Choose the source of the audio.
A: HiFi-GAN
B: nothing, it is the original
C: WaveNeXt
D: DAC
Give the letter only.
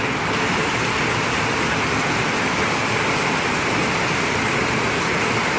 B